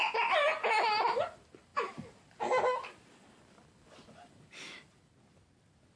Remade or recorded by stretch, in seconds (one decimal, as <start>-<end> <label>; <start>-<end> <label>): 0.0-6.0 recorded